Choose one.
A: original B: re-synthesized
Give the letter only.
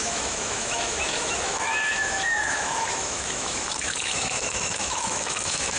B